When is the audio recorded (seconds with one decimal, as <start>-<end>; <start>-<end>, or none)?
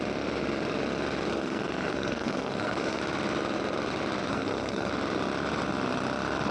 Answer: 0.0-1.3; 3.0-4.3; 4.9-6.5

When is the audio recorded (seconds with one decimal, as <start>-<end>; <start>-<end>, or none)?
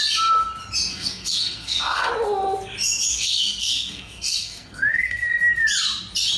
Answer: 0.0-0.9; 2.1-3.1; 5.5-6.4